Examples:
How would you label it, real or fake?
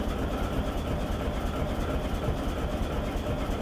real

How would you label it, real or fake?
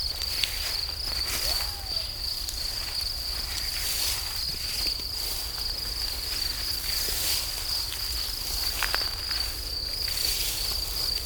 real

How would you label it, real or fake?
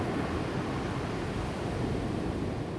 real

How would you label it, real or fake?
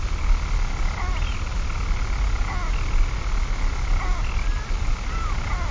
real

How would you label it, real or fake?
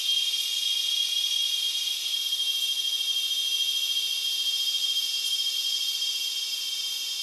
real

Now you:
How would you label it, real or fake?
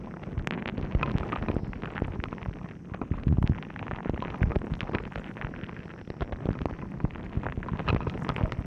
real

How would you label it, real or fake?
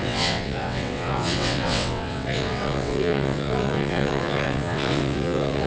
fake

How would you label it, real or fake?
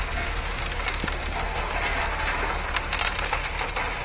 real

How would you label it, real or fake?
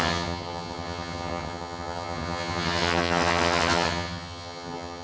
fake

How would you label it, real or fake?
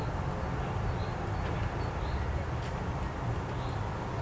real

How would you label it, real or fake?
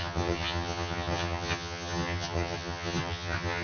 fake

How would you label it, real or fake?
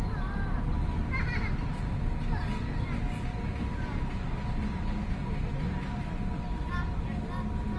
real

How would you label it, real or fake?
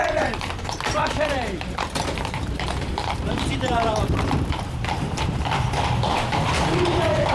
fake